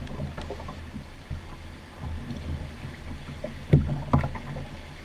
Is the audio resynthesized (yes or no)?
no